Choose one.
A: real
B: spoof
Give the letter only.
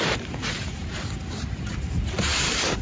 B